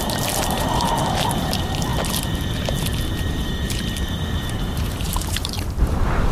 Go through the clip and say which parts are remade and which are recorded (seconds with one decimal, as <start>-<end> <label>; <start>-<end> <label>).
0.0-1.9 remade; 1.9-4.6 recorded; 4.6-6.3 remade